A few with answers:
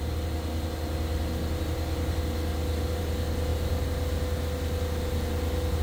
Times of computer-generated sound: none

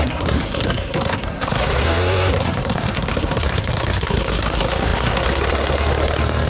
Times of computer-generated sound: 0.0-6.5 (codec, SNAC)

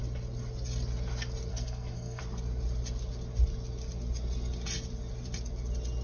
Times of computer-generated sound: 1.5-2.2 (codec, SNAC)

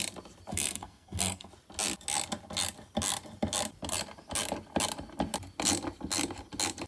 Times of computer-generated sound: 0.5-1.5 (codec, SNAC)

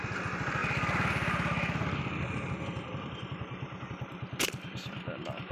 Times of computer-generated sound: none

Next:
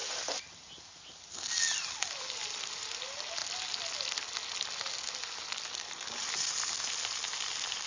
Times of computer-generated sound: none